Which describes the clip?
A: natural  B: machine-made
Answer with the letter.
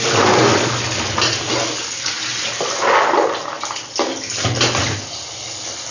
A